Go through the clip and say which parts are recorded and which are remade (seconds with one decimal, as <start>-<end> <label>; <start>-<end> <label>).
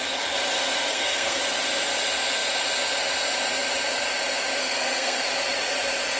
0.0-0.9 recorded; 0.9-1.4 remade; 1.4-4.6 recorded; 4.6-5.2 remade; 5.2-6.2 recorded